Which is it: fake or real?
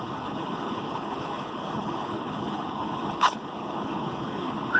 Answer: fake